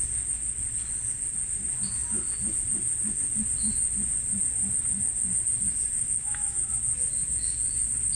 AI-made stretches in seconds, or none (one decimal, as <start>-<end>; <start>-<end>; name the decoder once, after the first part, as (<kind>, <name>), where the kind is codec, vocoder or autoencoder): 6.0-6.7 (autoencoder, DAC-VAE)